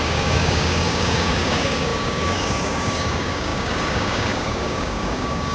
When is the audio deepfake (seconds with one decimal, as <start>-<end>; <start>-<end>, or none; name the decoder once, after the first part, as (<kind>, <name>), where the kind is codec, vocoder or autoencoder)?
0.0-5.5 (codec, DAC)